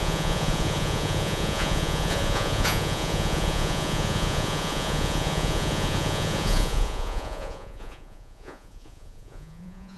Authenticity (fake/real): fake